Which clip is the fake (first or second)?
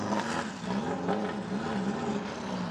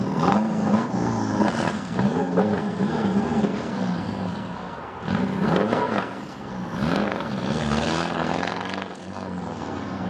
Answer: second